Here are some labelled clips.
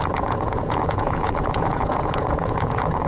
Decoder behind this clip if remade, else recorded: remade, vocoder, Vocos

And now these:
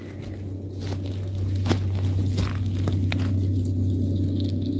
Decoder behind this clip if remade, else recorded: recorded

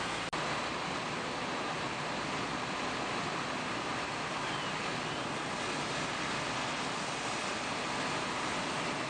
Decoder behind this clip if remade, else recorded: recorded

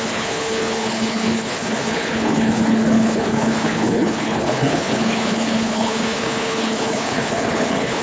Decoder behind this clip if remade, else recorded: remade, codec, HILCodec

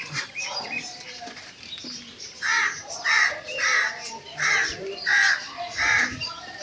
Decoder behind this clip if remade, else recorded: remade, vocoder, BigVGAN v2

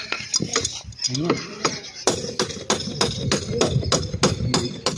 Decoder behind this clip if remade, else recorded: recorded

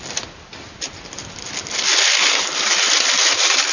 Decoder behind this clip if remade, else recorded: recorded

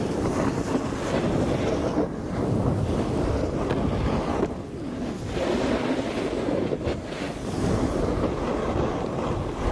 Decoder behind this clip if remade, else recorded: recorded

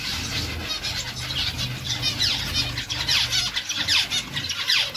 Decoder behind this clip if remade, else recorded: recorded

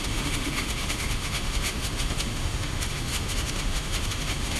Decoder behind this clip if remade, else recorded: remade, autoencoder, DAC-VAE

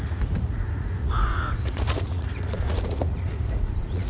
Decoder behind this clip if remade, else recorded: remade, vocoder, Vocos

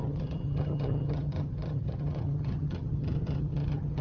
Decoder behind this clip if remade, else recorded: remade, vocoder, HiFi-GAN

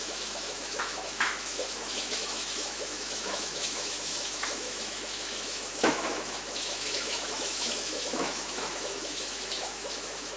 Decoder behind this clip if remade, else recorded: remade, autoencoder, DAC-VAE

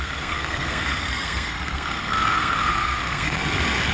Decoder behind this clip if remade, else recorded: remade, codec, SNAC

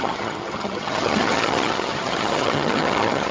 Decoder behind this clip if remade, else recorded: remade, vocoder, HiFi-GAN